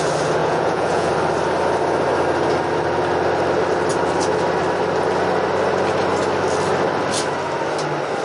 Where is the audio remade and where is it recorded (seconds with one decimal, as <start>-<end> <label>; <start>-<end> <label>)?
0.0-0.4 recorded; 0.4-1.1 remade; 1.1-8.2 recorded